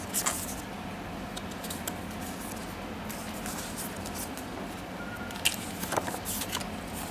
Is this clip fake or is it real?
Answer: real